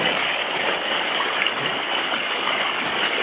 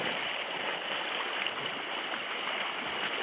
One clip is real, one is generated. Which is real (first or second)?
second